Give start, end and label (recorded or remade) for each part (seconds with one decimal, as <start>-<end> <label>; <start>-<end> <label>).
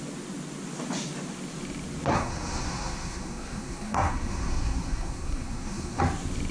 0.0-2.1 recorded; 2.1-6.0 remade; 6.0-6.5 recorded